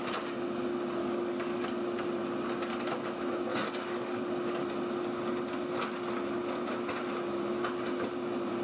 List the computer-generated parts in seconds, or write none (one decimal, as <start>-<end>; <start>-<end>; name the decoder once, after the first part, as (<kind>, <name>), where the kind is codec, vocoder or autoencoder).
1.0-1.6 (codec, DAC); 3.5-4.2